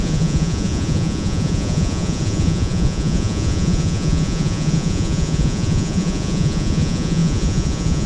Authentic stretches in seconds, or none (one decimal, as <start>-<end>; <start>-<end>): none